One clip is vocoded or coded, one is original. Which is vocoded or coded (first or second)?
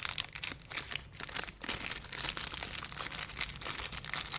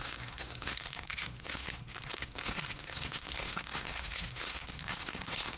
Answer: second